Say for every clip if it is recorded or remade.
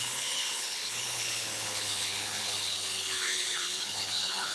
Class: remade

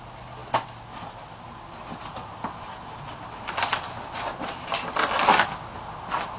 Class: recorded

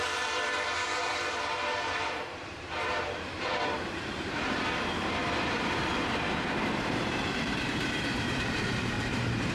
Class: remade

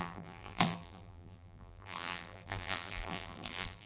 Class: remade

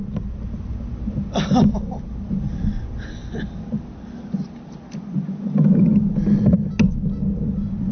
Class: recorded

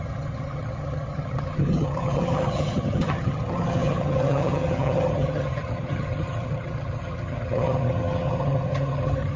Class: remade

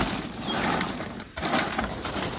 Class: remade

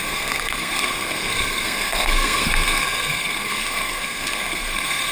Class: remade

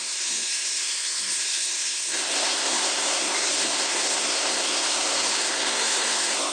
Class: remade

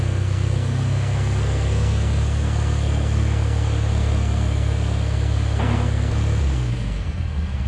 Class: remade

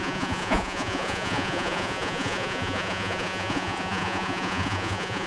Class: remade